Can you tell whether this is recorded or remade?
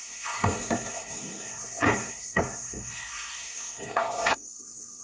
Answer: remade